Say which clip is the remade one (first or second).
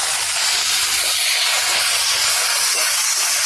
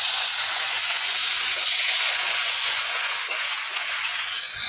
second